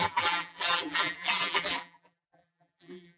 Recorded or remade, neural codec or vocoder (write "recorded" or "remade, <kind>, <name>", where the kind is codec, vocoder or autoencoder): remade, vocoder, BigVGAN v2